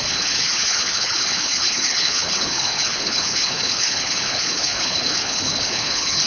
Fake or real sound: fake